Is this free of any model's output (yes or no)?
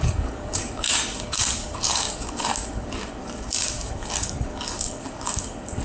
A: no